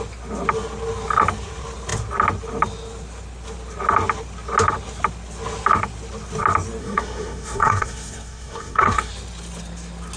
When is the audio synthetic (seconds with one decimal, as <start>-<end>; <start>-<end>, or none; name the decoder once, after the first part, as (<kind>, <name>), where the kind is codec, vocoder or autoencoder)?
6.8-9.1 (codec, SNAC)